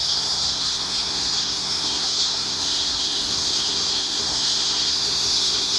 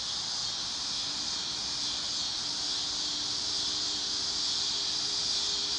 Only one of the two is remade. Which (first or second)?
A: first